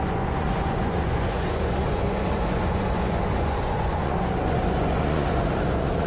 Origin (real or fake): fake